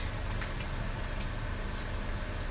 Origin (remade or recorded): recorded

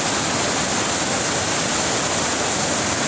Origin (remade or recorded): recorded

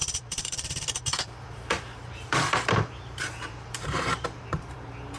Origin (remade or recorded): remade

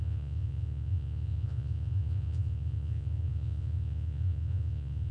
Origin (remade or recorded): remade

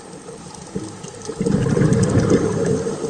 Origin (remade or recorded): recorded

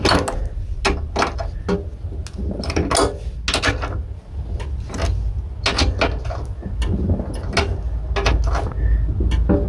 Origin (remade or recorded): recorded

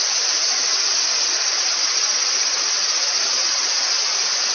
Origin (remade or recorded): recorded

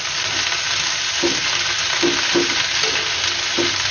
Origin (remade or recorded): recorded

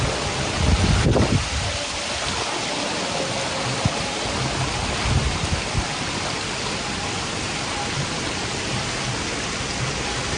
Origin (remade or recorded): recorded